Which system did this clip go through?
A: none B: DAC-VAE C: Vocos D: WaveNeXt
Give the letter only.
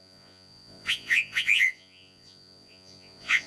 C